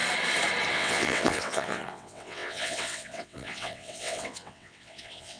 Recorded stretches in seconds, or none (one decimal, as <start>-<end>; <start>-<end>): 0.0-0.7